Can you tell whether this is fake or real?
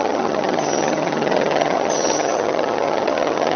fake